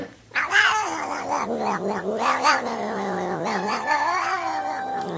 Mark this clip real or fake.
fake